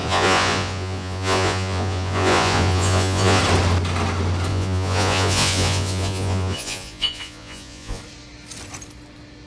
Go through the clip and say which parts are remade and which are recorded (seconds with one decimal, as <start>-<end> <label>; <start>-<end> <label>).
0.0-3.4 remade; 3.4-4.5 recorded; 4.5-8.0 remade; 8.0-9.5 recorded